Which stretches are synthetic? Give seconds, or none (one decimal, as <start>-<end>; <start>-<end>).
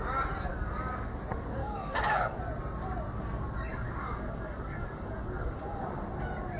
0.5-1.1; 1.6-2.4; 3.7-6.0